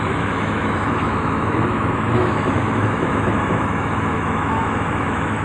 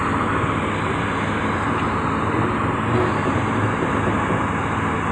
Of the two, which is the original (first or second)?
second